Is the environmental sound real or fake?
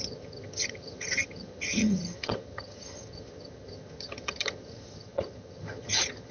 fake